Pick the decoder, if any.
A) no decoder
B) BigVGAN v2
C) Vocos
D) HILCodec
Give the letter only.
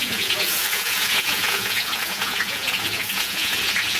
C